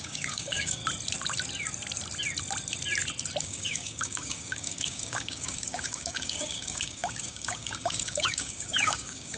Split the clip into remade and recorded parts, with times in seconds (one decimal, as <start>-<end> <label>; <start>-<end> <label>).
0.0-0.8 remade; 0.8-3.4 recorded; 3.4-9.4 remade